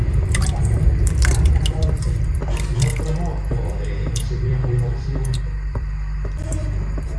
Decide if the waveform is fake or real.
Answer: fake